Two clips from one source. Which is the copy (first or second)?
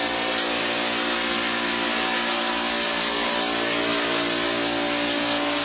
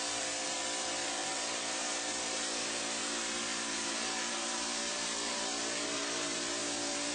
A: second